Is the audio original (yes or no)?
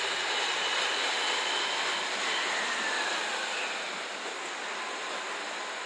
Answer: yes